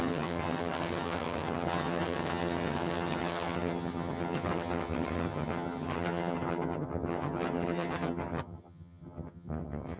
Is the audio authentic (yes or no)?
no